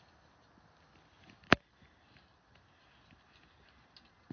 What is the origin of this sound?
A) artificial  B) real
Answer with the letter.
B